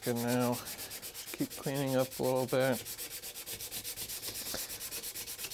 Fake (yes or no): no